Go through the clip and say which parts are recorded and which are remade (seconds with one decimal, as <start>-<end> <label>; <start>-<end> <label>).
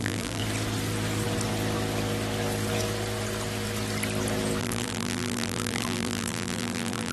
0.0-0.4 remade; 0.4-4.6 recorded; 4.6-7.1 remade